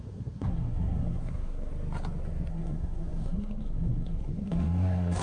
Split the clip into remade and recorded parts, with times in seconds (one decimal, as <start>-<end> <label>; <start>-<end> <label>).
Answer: 0.0-1.7 remade; 1.7-2.5 recorded; 2.5-5.2 remade

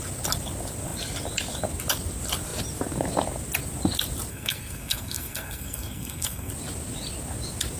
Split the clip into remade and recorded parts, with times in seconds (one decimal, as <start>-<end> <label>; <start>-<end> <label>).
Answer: 0.0-4.3 recorded; 4.3-6.5 remade; 6.5-7.8 recorded

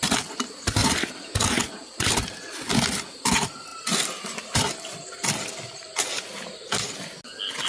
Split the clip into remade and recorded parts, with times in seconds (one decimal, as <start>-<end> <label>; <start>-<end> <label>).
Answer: 0.0-7.7 recorded

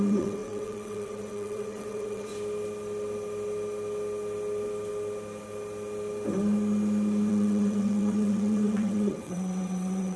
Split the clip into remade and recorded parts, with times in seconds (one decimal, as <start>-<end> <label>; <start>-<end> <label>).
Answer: 0.0-2.3 remade; 2.3-7.3 recorded; 7.3-10.2 remade

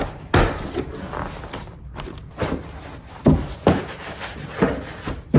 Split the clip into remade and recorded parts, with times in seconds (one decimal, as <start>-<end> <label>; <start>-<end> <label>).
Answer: 0.0-5.4 recorded

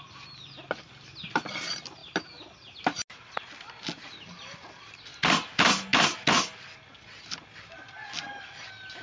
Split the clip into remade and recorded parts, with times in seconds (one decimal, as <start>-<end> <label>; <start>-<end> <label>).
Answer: 0.0-9.0 recorded

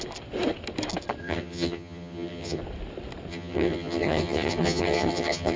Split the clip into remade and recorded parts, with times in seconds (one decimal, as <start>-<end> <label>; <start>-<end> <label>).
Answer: 0.0-1.2 recorded; 1.2-2.6 remade; 2.6-3.3 recorded; 3.3-5.6 remade

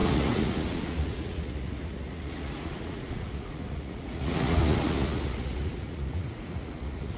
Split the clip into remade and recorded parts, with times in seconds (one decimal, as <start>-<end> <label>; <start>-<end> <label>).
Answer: 0.0-7.2 remade